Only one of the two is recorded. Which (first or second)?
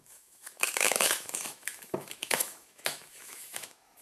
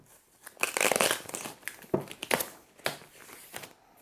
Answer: second